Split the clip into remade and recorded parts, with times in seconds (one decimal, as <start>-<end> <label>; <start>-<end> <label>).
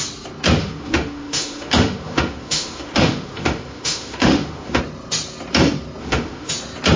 0.0-0.6 recorded; 0.6-4.8 remade; 4.8-6.0 recorded; 6.0-6.5 remade; 6.5-7.0 recorded